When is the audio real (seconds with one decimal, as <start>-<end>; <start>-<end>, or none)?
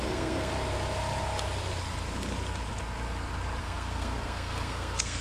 0.5-3.6